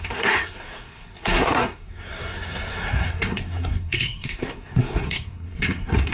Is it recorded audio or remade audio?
remade